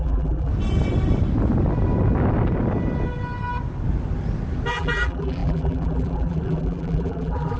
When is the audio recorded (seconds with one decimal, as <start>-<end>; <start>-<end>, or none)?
0.5-4.7